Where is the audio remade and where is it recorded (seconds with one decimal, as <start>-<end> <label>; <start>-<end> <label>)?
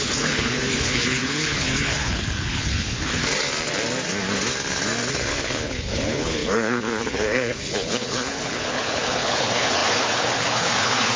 0.0-3.2 remade; 3.2-5.1 recorded; 5.1-11.2 remade